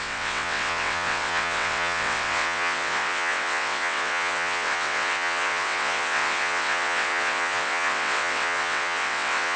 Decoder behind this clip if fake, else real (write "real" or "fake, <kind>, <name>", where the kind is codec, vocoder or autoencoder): fake, vocoder, WaveNeXt